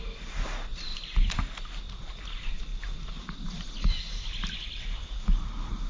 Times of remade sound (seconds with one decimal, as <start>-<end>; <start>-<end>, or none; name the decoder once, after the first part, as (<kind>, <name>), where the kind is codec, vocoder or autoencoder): none